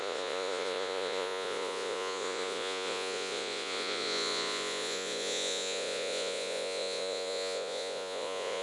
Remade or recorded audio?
remade